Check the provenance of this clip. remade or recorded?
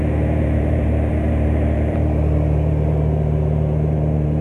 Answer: remade